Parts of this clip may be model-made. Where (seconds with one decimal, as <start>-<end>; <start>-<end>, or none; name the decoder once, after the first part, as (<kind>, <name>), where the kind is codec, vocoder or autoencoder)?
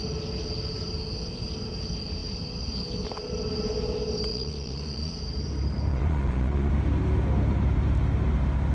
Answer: 4.3-5.1 (vocoder, Vocos); 5.9-6.7